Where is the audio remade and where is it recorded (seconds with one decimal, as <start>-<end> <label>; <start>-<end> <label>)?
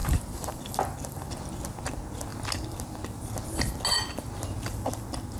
0.0-0.6 remade; 0.6-5.4 recorded